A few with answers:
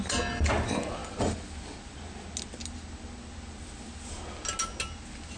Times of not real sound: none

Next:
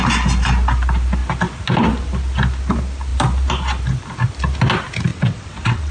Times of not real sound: 5.1-5.9 (vocoder, WaveNeXt)

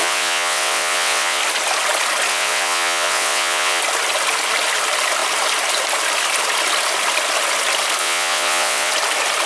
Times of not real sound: 0.0-1.4 (vocoder, WaveNeXt); 2.3-3.8; 8.0-8.9

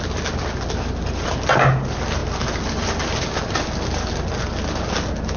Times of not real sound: none

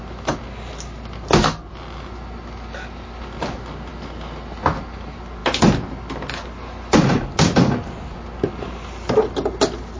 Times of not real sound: none

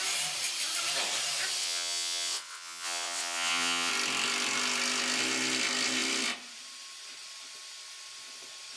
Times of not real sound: 1.6-3.9 (vocoder, WaveNeXt)

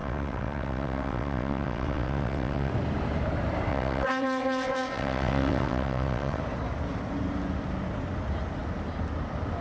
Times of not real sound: 0.0-2.7 (vocoder, WaveNeXt); 3.7-6.4

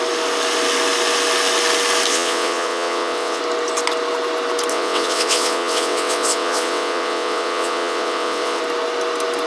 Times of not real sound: 2.1-3.4 (vocoder, WaveNeXt); 4.7-8.6